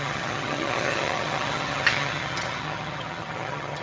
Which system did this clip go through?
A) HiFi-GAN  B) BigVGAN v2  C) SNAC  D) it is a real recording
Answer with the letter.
A